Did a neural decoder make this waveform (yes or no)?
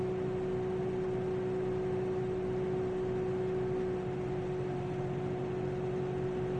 no